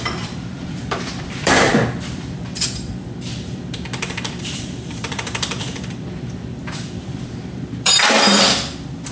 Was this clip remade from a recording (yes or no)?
yes